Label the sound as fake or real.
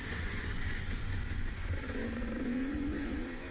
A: fake